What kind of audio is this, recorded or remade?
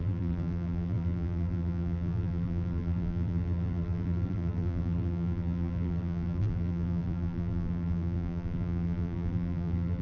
remade